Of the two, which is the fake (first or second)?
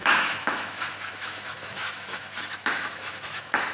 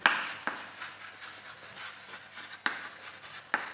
first